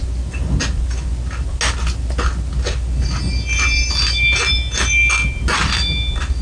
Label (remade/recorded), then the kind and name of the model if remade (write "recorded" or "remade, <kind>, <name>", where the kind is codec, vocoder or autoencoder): recorded